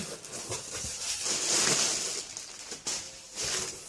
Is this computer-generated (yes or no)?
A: no